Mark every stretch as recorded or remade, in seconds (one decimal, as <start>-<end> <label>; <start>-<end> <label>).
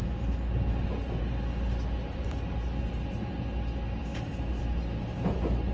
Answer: 0.0-4.0 recorded; 4.0-4.6 remade; 4.6-5.7 recorded